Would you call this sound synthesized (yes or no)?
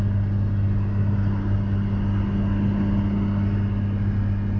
no